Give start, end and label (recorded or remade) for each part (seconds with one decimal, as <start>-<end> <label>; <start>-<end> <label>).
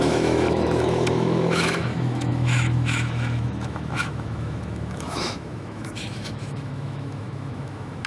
0.0-8.1 remade